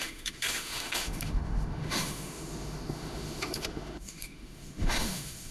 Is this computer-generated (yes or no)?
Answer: yes